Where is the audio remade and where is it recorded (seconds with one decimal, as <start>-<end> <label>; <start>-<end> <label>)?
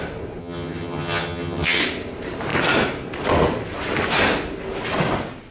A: 0.0-0.4 recorded; 0.4-1.8 remade; 1.8-5.5 recorded